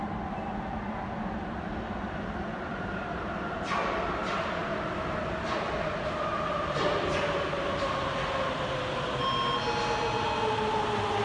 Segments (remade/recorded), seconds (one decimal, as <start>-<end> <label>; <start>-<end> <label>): 0.0-11.2 recorded